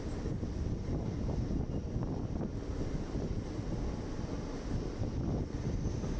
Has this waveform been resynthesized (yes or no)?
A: no